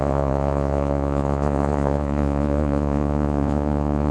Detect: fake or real fake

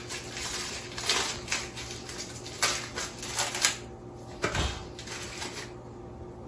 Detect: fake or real real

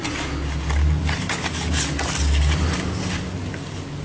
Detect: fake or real real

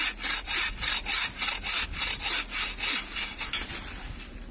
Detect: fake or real real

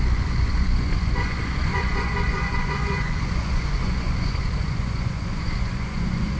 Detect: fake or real fake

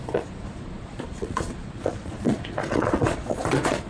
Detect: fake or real fake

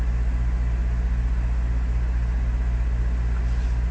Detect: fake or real real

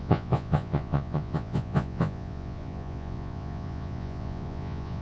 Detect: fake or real fake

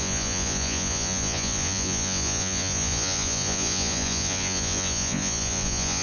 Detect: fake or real fake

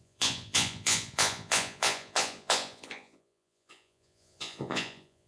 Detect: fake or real fake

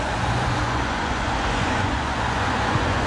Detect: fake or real fake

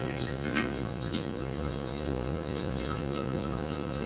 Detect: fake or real fake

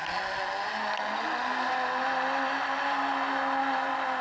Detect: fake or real real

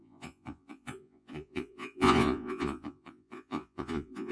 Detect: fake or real fake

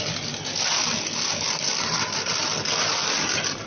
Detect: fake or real real